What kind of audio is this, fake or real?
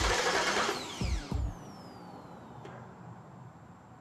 fake